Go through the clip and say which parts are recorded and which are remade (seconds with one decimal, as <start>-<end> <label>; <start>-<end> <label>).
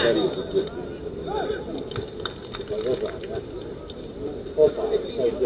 0.0-5.5 recorded